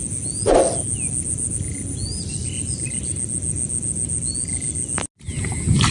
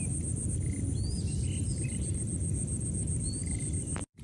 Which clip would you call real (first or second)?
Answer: first